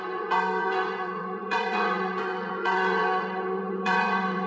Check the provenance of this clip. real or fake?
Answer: fake